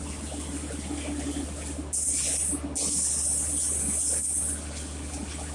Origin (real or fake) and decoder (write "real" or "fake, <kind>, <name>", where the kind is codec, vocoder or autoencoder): real